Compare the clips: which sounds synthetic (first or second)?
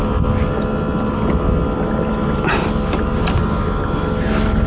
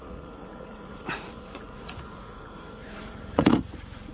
second